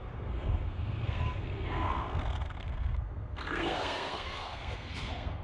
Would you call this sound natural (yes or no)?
no